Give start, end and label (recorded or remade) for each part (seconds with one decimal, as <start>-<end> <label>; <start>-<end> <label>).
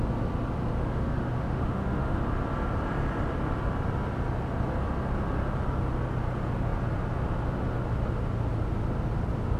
0.0-0.8 recorded; 0.8-2.2 remade; 2.2-9.6 recorded